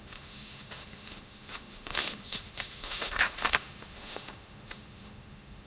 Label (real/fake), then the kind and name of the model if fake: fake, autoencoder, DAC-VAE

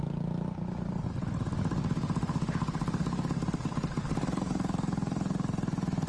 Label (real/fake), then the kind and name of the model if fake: real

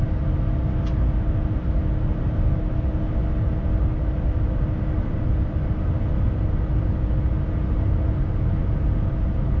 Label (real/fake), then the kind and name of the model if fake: real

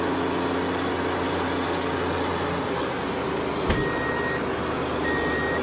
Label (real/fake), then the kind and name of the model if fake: real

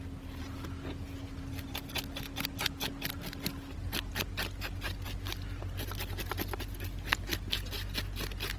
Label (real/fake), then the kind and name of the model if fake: real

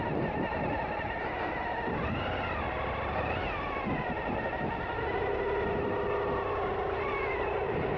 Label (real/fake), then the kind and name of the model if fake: real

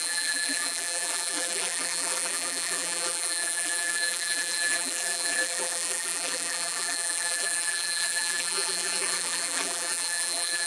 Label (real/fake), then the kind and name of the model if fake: fake, vocoder, BigVGAN v2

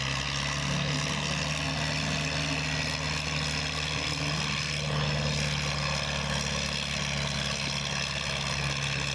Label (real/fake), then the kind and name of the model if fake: real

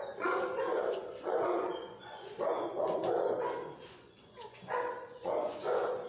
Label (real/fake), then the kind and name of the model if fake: fake, vocoder, Vocos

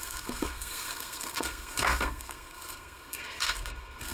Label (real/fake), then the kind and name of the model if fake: fake, codec, SNAC